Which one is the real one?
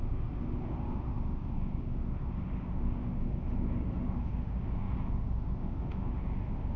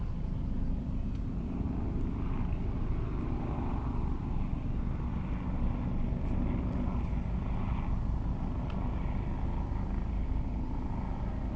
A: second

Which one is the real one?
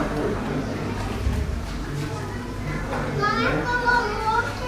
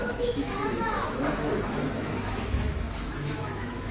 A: first